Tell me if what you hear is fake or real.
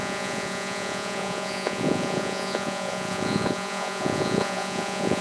fake